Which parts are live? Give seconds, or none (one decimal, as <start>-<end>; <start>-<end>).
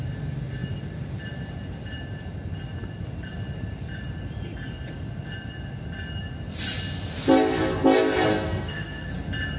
0.0-8.3; 9.1-9.6